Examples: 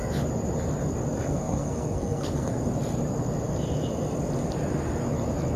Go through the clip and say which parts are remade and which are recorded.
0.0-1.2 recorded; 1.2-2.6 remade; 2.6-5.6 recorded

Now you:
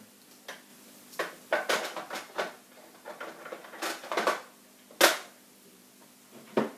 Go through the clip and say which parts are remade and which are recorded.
0.0-6.8 recorded

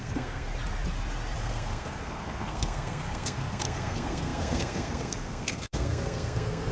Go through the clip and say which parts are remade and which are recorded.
0.0-0.5 remade; 0.5-1.4 recorded; 1.4-6.7 remade

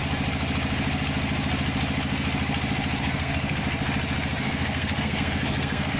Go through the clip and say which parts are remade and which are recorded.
0.0-3.0 recorded; 3.0-3.6 remade; 3.6-4.4 recorded; 4.4-6.0 remade

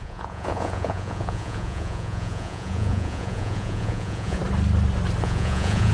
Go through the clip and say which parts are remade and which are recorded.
0.0-4.4 remade; 4.4-5.2 recorded; 5.2-5.9 remade

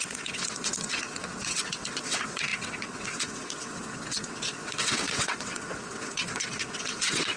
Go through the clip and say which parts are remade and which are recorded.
0.0-7.4 remade

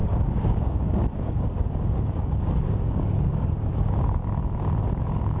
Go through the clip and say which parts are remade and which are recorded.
0.0-4.2 remade; 4.2-5.0 recorded; 5.0-5.4 remade

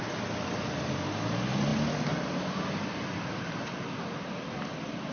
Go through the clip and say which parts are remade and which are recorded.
0.0-5.1 recorded